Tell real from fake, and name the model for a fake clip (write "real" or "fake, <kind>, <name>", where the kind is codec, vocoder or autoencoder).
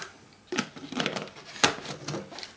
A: real